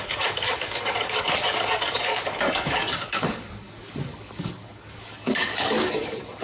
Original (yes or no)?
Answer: no